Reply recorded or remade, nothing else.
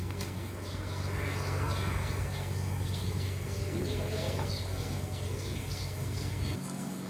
remade